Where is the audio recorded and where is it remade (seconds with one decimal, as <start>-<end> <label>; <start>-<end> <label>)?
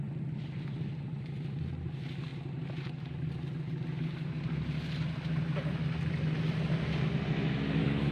0.0-8.1 recorded